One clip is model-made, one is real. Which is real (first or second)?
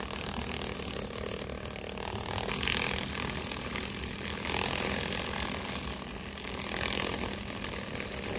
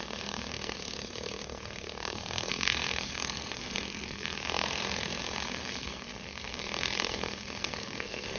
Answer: first